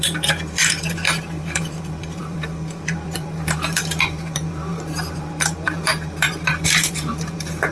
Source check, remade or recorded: remade